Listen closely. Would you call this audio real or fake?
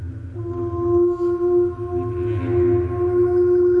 real